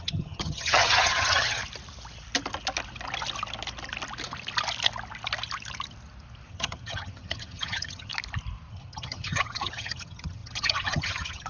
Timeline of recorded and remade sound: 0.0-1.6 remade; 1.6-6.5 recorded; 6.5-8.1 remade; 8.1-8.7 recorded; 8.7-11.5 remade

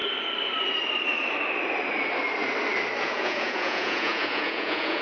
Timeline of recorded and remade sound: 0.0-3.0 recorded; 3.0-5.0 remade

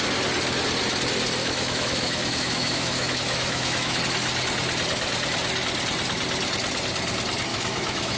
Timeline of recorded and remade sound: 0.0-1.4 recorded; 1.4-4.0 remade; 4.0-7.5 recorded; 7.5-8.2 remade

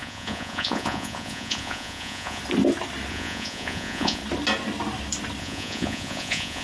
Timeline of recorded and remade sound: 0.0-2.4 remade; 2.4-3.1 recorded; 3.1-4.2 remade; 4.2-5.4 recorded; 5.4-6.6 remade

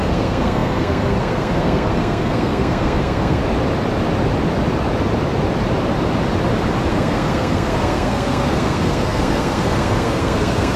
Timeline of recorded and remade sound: 0.0-3.4 remade; 3.4-6.9 recorded; 6.9-10.8 remade

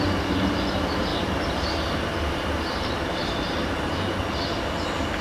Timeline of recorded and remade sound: 0.0-1.1 recorded; 1.1-4.2 remade; 4.2-5.2 recorded